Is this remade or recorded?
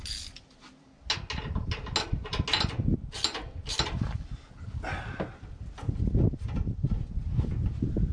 recorded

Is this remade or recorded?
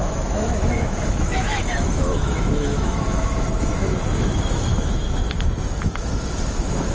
remade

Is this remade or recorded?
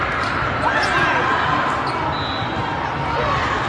recorded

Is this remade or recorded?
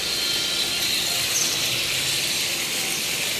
recorded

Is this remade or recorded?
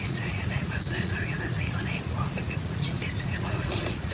remade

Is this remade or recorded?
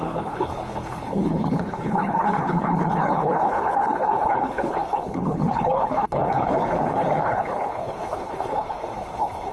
remade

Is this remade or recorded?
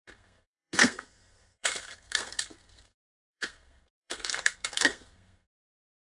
remade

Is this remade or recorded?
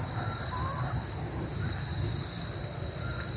recorded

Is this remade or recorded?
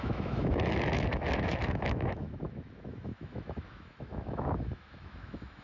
remade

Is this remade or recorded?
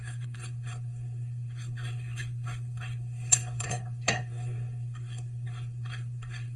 remade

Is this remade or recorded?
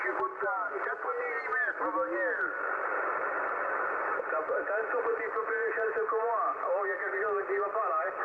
recorded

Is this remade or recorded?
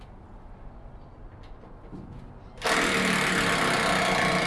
recorded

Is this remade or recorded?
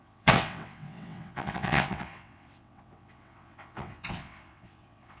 remade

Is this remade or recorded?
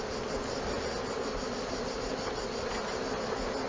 recorded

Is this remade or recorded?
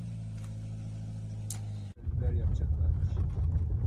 recorded